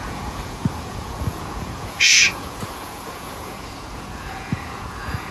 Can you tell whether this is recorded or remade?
remade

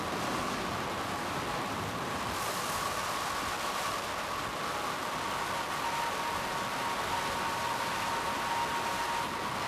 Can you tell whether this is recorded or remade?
recorded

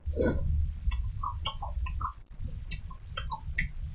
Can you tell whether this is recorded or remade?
recorded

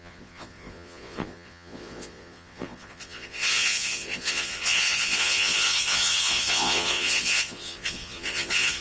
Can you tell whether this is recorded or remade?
remade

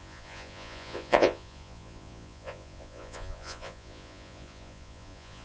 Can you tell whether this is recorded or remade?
remade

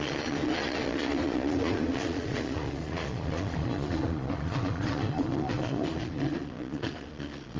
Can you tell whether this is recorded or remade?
remade